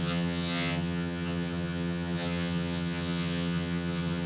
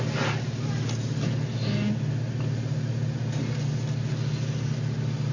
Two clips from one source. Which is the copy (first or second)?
first